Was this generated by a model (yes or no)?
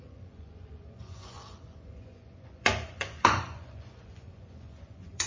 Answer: yes